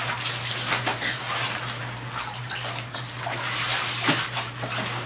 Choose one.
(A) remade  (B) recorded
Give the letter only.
B